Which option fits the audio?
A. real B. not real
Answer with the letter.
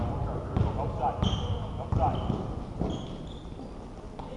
A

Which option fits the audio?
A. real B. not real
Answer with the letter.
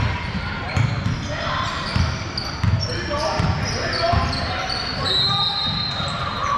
A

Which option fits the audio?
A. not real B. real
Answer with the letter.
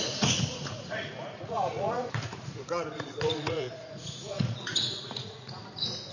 A